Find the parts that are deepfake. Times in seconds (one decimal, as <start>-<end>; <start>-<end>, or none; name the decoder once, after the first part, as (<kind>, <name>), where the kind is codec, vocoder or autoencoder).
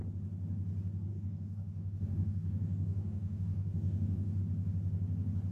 1.1-4.4 (codec, DAC)